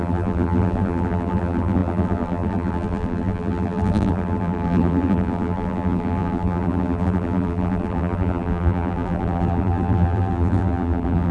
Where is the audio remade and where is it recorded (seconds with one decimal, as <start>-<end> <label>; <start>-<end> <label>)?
0.0-11.3 remade